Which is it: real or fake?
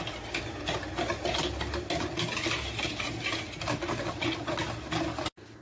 real